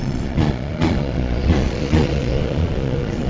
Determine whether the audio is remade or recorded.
remade